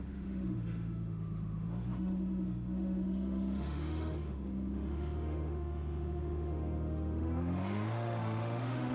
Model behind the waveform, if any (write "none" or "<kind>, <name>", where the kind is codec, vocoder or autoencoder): autoencoder, DAC-VAE